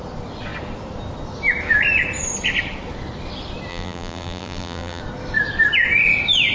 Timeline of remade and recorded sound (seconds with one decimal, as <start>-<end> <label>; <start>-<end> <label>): 0.0-3.7 recorded; 3.7-5.0 remade; 5.0-6.5 recorded